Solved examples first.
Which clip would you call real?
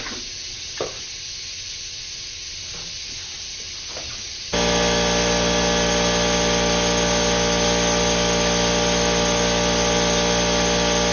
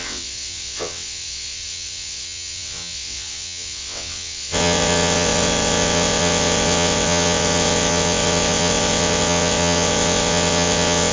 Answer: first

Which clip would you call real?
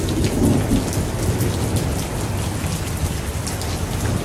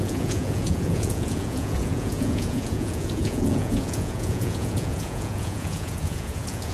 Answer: first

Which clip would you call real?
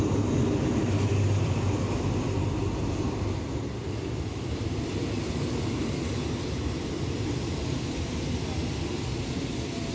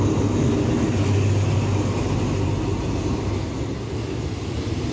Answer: second